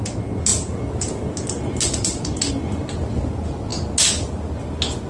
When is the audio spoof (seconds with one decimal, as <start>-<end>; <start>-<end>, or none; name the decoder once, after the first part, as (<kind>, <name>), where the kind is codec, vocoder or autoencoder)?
none